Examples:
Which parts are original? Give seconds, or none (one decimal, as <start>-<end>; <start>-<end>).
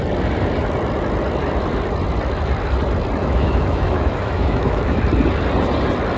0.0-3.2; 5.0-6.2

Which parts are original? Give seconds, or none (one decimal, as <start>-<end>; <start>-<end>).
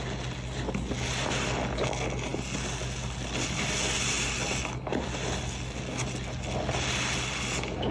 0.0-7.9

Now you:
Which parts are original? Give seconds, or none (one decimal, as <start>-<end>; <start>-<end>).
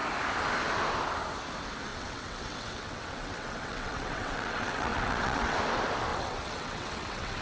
0.0-1.9; 5.6-6.1